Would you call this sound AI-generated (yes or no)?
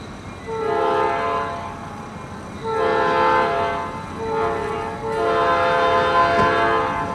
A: no